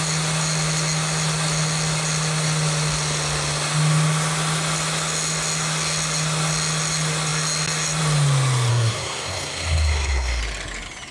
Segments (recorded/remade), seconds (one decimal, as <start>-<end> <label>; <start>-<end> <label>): 0.0-8.7 recorded; 8.7-10.4 remade; 10.4-11.1 recorded